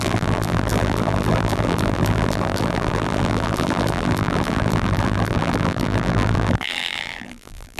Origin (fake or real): fake